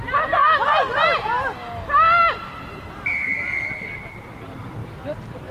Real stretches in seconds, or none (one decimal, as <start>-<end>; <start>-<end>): 0.0-4.8